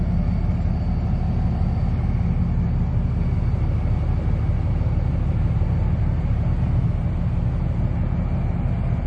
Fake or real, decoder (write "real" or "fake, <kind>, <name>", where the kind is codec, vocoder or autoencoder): real